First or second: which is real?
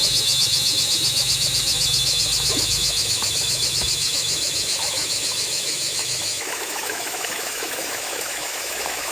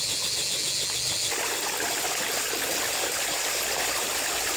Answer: second